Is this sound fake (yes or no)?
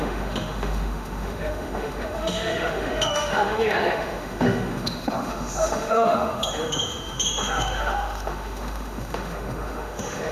yes